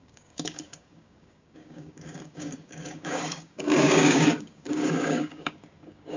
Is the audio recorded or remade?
remade